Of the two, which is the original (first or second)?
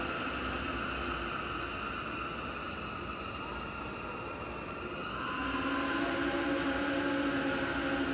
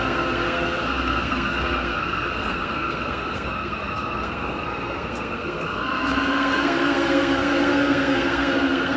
first